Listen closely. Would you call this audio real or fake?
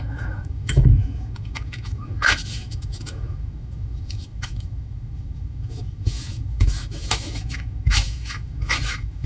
fake